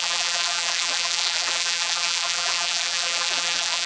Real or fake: fake